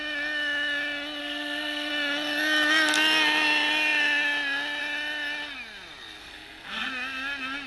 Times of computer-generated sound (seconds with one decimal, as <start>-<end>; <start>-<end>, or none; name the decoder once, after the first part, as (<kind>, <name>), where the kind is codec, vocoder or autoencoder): 1.2-1.9 (codec, SNAC); 6.2-6.9